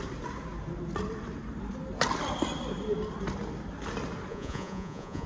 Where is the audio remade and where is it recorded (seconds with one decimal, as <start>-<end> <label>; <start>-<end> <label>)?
0.0-4.3 recorded; 4.3-5.3 remade